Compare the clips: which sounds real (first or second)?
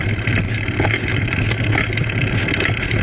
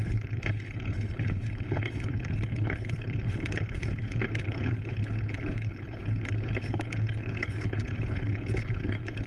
first